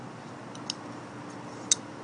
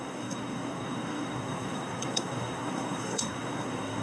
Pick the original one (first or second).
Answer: first